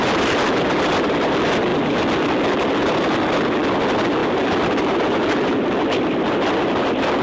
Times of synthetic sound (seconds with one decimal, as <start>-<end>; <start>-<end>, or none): none